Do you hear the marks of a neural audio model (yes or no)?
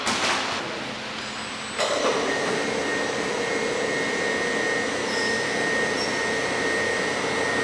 no